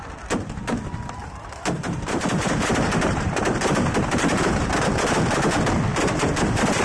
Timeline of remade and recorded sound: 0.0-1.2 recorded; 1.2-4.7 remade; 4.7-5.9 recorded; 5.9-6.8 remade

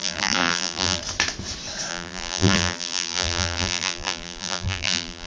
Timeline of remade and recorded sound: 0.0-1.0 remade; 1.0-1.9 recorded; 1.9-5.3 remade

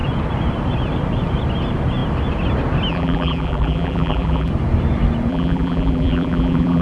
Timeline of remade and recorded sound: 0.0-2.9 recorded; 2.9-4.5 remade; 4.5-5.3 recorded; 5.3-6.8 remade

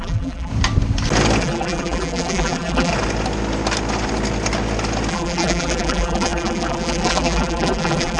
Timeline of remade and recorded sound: 0.0-0.5 remade; 0.5-1.4 recorded; 1.4-2.9 remade; 2.9-5.1 recorded; 5.1-8.2 remade